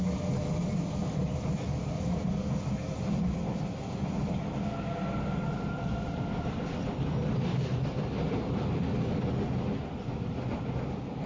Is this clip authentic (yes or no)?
yes